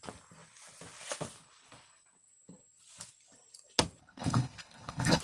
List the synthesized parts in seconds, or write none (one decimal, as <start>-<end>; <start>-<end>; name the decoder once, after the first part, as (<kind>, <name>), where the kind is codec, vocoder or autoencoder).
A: 4.0-5.2 (codec, HILCodec)